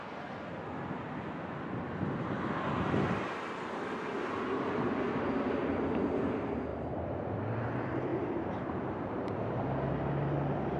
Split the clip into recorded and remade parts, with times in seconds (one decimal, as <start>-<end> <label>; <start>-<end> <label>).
0.0-6.7 recorded; 6.7-7.4 remade; 7.4-8.1 recorded; 8.1-9.6 remade; 9.6-10.8 recorded